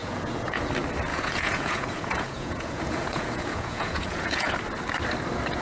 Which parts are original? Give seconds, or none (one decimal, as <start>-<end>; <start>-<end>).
0.6-1.1; 4.5-5.6